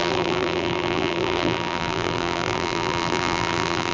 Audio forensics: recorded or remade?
remade